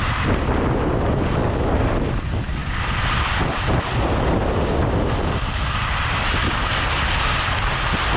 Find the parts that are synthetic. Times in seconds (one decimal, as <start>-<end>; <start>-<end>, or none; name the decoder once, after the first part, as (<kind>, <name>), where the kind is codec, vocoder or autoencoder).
none